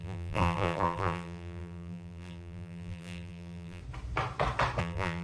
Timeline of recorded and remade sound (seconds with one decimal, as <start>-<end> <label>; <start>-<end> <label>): 0.0-3.8 remade; 3.8-4.8 recorded; 4.8-5.2 remade